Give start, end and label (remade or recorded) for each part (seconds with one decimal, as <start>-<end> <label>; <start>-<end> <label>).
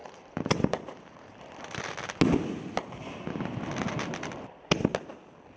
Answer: 0.0-1.8 remade; 1.8-5.6 recorded